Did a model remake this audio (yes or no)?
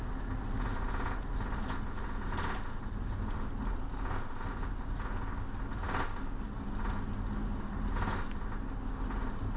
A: no